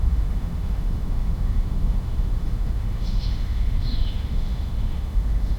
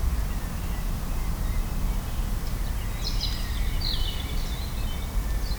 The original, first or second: second